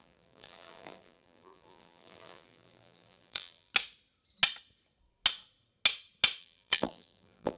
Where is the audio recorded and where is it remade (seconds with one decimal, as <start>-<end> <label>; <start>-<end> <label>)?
0.0-3.7 remade; 3.7-6.4 recorded; 6.4-7.6 remade